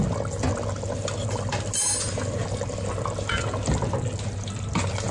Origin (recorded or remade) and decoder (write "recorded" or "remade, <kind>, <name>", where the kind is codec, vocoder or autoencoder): recorded